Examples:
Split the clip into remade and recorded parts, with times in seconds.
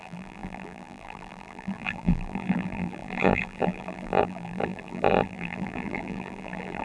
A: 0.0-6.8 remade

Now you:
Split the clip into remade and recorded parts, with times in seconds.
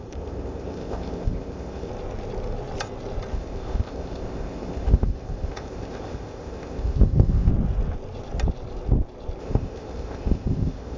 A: 0.0-1.9 remade; 1.9-3.3 recorded; 3.3-7.5 remade; 7.5-9.4 recorded; 9.4-11.0 remade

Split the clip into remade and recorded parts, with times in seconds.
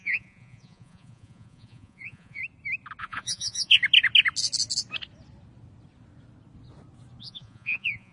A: 0.0-2.4 remade; 2.4-3.0 recorded; 3.0-3.8 remade; 3.8-7.2 recorded; 7.2-8.1 remade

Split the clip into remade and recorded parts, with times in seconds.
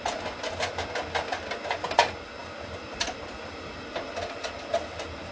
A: 0.0-5.3 recorded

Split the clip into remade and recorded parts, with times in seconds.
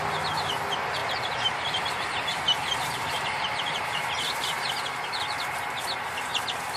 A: 0.0-1.0 recorded; 1.0-5.1 remade; 5.1-6.3 recorded; 6.3-6.8 remade